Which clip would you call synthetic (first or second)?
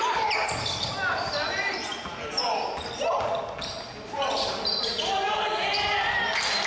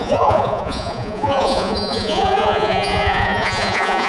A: second